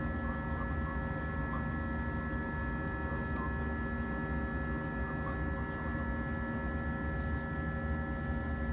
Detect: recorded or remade recorded